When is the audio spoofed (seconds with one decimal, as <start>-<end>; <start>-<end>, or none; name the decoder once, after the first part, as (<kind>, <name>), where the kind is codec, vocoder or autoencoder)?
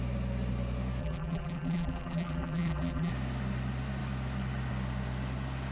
1.0-3.1 (vocoder, BigVGAN v2)